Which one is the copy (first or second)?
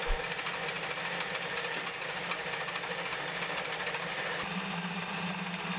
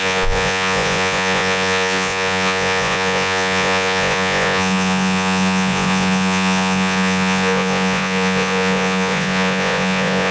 second